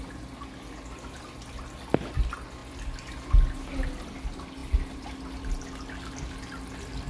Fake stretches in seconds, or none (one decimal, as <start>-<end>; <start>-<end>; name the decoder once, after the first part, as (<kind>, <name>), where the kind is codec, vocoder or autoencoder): none